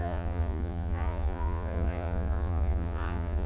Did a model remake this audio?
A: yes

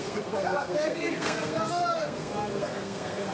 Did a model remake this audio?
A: yes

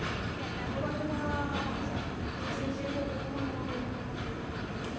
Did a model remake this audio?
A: no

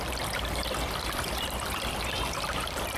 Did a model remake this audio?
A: no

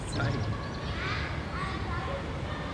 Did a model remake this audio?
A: no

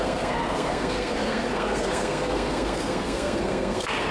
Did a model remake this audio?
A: yes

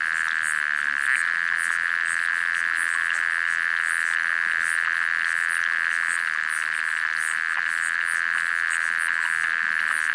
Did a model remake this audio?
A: no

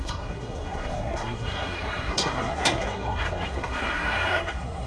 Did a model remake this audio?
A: yes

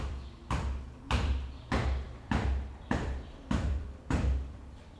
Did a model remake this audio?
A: yes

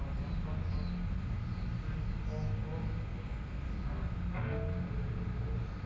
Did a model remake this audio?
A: no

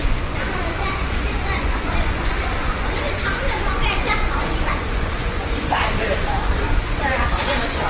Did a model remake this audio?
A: yes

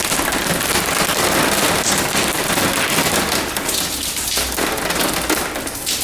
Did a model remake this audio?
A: no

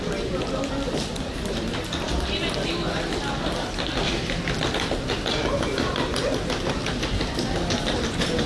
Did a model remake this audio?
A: no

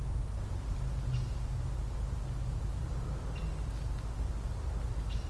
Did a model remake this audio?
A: no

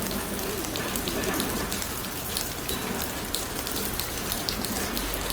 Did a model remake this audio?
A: no